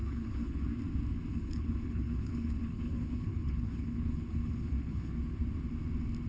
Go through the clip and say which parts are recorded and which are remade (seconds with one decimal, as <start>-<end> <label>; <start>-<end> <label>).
0.0-0.6 remade; 0.6-1.3 recorded; 1.3-5.1 remade; 5.1-6.3 recorded